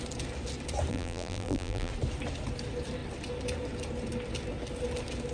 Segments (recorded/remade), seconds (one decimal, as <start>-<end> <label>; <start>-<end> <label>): 0.0-0.9 recorded; 0.9-1.9 remade; 1.9-5.3 recorded